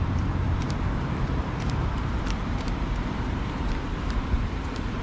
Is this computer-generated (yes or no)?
yes